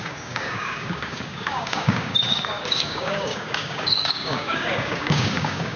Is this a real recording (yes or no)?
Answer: no